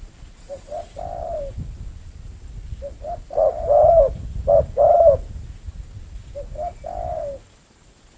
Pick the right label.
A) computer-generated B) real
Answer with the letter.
B